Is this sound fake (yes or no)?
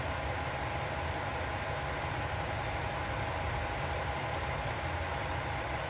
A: no